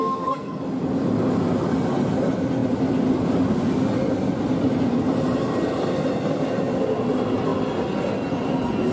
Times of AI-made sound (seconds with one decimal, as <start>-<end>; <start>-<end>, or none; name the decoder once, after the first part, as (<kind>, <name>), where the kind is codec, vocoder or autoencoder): 0.0-0.6 (codec, SNAC)